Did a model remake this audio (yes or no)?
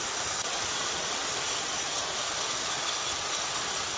no